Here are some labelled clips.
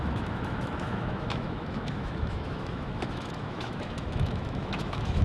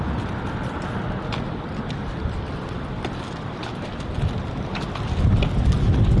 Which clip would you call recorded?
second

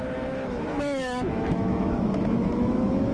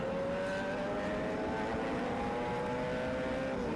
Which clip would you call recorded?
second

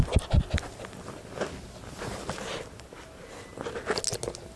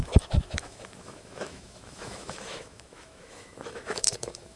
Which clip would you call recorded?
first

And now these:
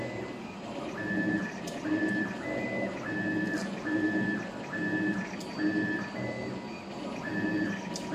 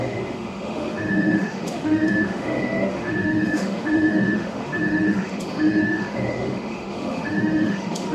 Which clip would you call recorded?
first